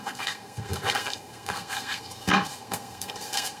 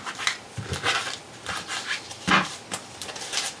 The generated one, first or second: first